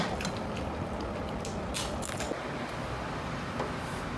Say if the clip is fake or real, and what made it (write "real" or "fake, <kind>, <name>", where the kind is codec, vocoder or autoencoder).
real